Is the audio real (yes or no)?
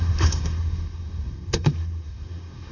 no